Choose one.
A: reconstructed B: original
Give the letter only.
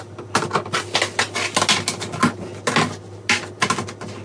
B